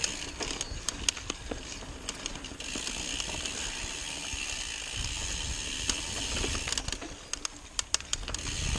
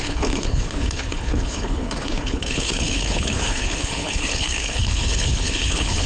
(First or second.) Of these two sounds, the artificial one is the second